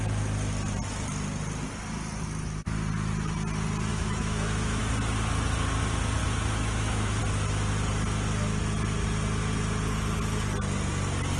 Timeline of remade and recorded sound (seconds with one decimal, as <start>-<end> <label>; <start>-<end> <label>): 0.0-3.9 recorded; 3.9-4.8 remade; 4.8-6.2 recorded; 6.2-7.2 remade; 7.2-11.4 recorded